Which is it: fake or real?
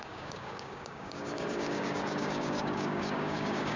fake